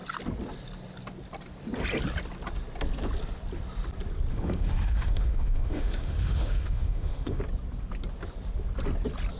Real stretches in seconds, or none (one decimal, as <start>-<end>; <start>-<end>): 0.0-4.3; 7.4-9.4